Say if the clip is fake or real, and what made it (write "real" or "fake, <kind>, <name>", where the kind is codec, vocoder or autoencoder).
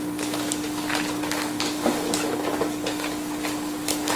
fake, codec, DAC